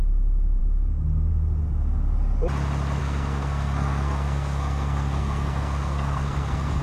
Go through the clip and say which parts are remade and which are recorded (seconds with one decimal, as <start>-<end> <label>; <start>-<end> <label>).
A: 0.0-3.0 recorded; 3.0-6.8 remade